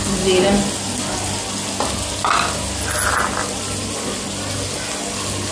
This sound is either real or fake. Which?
real